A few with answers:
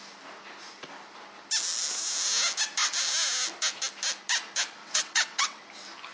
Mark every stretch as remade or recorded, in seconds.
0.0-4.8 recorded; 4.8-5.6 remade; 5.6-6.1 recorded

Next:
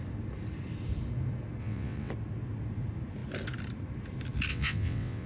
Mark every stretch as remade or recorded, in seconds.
0.0-1.6 recorded; 1.6-2.1 remade; 2.1-4.5 recorded; 4.5-5.3 remade

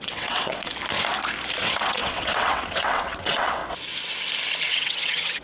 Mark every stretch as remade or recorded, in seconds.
0.0-0.7 remade; 0.7-1.6 recorded; 1.6-3.6 remade; 3.6-4.6 recorded; 4.6-5.4 remade